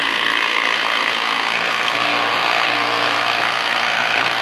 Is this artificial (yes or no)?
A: yes